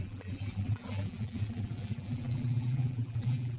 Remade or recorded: remade